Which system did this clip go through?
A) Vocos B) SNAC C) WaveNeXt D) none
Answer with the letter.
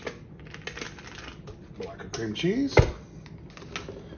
D